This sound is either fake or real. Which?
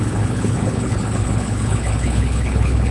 fake